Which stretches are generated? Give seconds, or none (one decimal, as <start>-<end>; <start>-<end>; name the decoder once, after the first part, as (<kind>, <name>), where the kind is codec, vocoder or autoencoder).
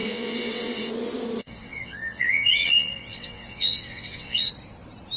0.0-0.9 (vocoder, WaveNeXt); 1.4-4.5